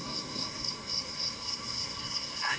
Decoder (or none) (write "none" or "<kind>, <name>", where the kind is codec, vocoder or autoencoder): codec, SNAC